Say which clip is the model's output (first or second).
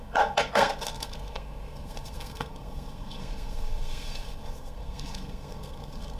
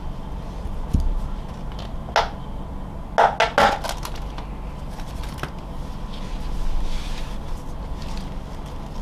first